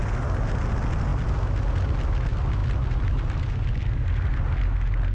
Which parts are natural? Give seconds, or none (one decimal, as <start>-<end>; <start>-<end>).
0.0-5.1

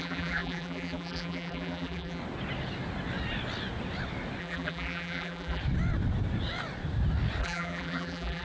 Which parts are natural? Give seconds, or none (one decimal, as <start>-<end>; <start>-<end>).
2.2-4.4; 5.6-7.4

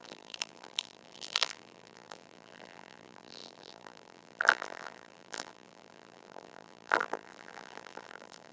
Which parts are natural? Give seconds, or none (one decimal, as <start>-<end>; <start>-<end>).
none

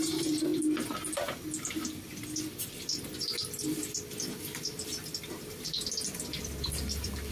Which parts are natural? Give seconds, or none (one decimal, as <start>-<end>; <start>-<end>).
0.5-4.4

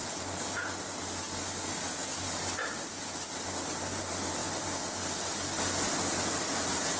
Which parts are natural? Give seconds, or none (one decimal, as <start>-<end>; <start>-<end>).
0.0-7.0

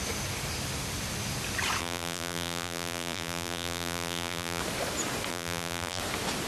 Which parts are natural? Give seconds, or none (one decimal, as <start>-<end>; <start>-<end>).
0.0-1.8; 4.6-5.3; 6.0-6.5

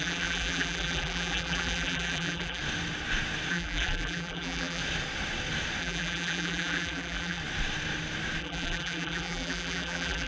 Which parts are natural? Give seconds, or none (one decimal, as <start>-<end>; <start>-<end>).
2.6-3.5; 4.8-5.8; 7.4-8.4